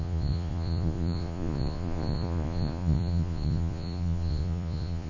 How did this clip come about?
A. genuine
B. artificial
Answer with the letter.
B